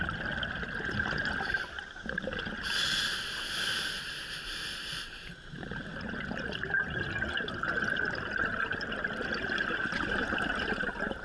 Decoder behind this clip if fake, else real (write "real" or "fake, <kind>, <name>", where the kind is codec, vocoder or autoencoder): real